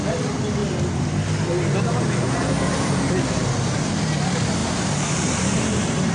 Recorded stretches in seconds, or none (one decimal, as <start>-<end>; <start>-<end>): 0.0-4.6

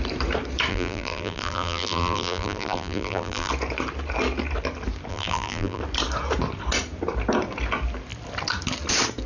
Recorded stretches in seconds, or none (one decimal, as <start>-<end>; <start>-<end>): 0.0-0.7; 3.5-5.1; 5.8-9.3

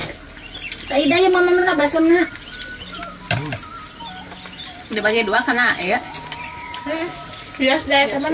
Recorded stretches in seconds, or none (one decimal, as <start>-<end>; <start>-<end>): 0.0-1.6; 2.3-7.1; 7.6-8.3

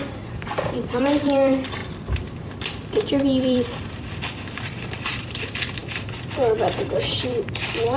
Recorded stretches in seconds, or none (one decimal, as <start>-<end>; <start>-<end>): 1.8-2.4

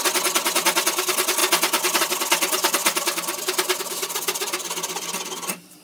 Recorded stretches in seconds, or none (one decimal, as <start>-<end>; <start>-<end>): 0.0-2.8; 3.4-5.8

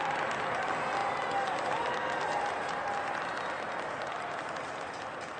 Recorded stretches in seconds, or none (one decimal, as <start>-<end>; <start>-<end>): 0.0-5.4